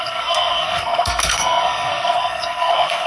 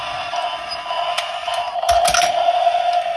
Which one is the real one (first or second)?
second